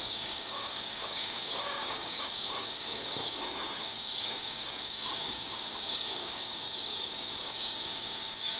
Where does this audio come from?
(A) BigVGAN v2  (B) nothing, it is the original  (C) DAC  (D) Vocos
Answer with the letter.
C